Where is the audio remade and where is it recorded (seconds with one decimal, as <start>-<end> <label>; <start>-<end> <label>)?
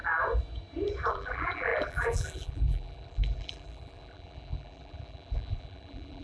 0.0-1.1 recorded; 1.1-6.2 remade